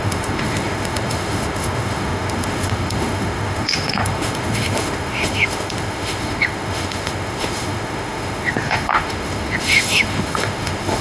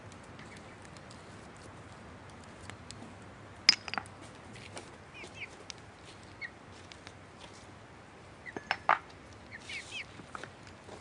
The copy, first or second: first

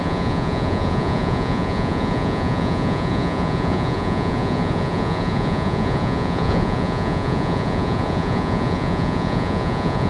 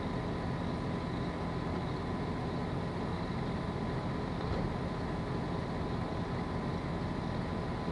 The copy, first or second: first